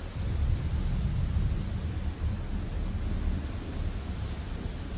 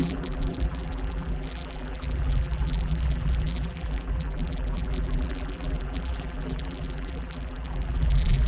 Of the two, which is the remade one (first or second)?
second